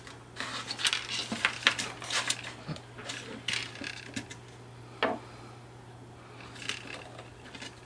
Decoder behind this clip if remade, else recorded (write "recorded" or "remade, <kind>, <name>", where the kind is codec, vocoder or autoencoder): recorded